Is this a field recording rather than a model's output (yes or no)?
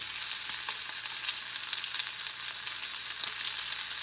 yes